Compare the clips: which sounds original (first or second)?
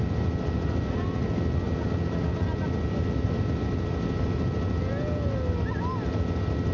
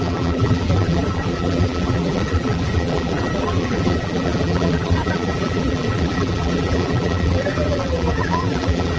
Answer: first